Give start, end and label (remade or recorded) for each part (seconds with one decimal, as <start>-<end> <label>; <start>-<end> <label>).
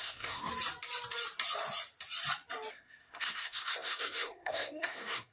0.0-0.5 remade; 0.5-2.7 recorded; 2.7-5.3 remade